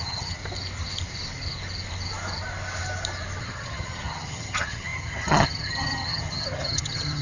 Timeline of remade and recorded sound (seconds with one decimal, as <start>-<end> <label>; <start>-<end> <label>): 0.0-0.4 remade; 0.4-3.4 recorded; 3.4-7.2 remade